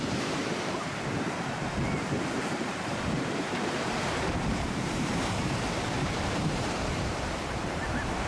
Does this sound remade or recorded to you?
remade